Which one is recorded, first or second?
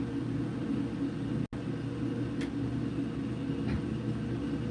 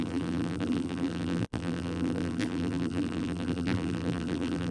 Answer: first